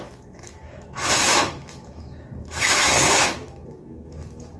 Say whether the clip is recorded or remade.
remade